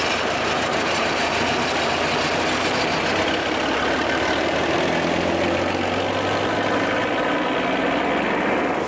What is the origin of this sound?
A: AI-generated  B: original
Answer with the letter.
B